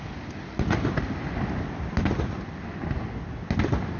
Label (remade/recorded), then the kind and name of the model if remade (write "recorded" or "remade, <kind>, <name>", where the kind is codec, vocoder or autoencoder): recorded